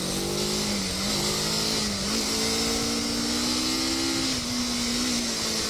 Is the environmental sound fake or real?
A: real